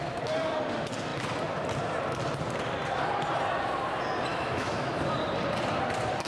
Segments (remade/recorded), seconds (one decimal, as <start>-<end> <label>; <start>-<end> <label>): 0.0-4.3 recorded; 4.3-4.9 remade; 4.9-6.3 recorded